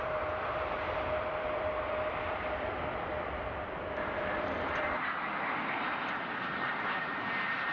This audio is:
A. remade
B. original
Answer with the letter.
A